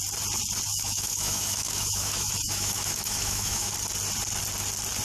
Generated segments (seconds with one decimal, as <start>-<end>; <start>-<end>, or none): 0.7-3.7